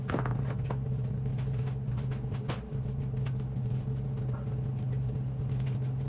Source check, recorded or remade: recorded